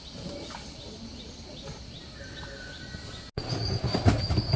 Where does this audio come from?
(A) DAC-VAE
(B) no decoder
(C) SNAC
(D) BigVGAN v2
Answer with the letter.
B